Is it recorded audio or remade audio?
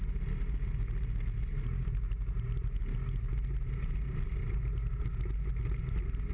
recorded